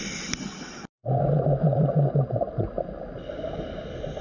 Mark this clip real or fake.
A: fake